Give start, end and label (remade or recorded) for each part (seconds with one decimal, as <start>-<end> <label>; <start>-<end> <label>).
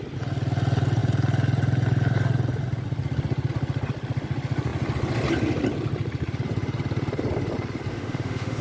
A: 0.0-7.9 recorded; 7.9-8.6 remade